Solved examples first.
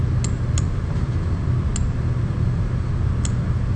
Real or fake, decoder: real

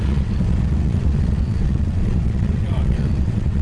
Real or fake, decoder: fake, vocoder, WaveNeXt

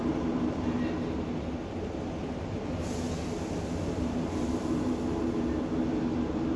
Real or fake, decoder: real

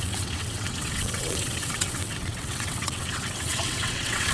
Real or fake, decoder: fake, vocoder, WaveNeXt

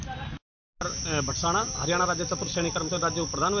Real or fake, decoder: real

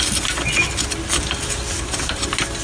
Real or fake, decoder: real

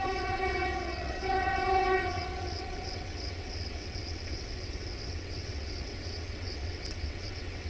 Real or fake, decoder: fake, vocoder, WaveNeXt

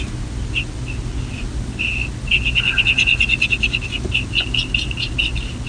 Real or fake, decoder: real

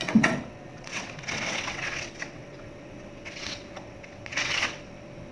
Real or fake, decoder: fake, vocoder, WaveNeXt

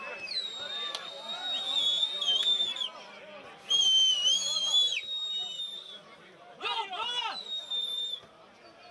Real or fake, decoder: real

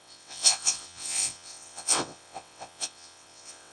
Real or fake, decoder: fake, vocoder, WaveNeXt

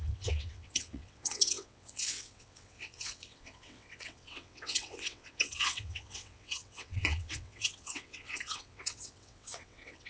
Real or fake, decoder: fake, vocoder, WaveNeXt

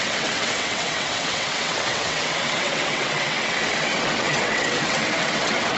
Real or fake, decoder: fake, vocoder, WaveNeXt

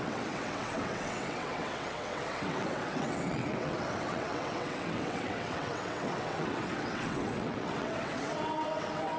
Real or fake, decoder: fake, vocoder, WaveNeXt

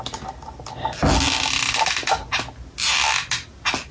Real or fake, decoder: real